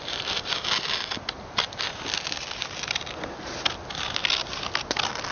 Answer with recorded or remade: recorded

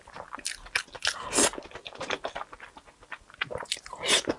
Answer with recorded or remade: recorded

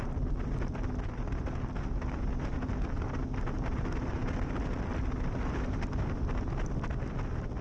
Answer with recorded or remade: recorded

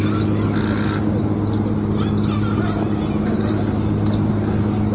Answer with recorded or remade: recorded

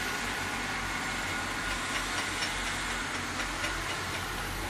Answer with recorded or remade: recorded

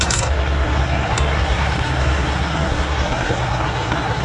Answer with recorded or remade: remade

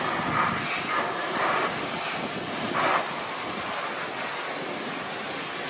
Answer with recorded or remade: recorded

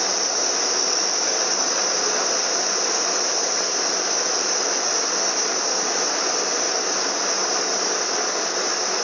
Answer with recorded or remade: recorded